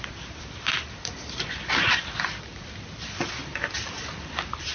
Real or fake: fake